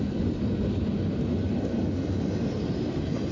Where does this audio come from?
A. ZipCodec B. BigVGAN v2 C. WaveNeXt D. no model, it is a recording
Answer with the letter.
D